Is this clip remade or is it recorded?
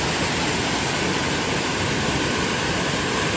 recorded